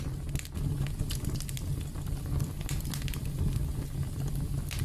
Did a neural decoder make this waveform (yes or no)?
no